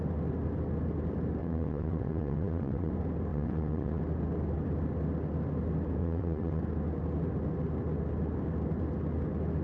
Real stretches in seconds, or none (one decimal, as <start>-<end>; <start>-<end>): 0.0-1.4; 2.9-3.3; 4.0-6.0; 6.6-9.6